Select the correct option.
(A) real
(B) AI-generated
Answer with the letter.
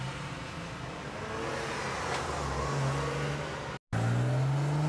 A